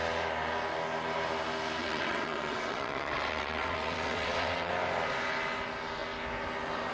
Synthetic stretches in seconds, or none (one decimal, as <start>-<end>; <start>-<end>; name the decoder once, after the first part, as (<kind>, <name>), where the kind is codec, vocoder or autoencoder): 1.8-4.7 (vocoder, WaveNeXt)